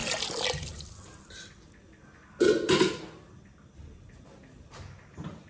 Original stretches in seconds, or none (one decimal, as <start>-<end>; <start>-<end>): 0.0-5.5